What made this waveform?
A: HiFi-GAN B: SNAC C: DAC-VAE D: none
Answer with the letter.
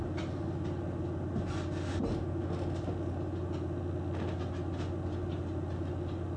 D